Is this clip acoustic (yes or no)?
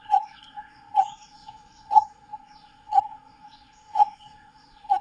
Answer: no